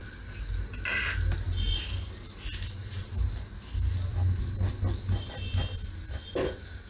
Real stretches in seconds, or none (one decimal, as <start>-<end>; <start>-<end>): 0.0-6.9

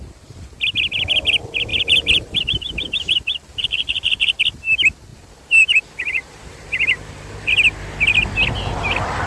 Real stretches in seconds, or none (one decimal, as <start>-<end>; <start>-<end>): 0.0-1.7; 4.4-5.1; 7.5-9.3

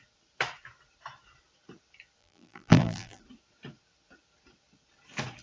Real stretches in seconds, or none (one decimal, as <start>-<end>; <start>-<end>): 0.0-2.2; 3.2-5.4

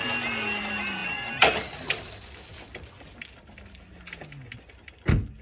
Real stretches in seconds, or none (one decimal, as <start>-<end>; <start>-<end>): 0.0-5.4

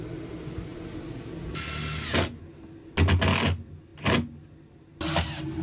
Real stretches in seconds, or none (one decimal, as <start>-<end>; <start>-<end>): 0.0-0.7; 1.8-5.6

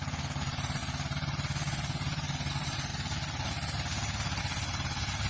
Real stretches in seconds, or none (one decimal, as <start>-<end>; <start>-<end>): 0.8-2.5; 2.9-4.4

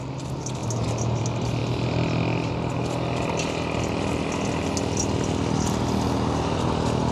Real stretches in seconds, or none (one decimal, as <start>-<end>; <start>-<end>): 0.0-7.1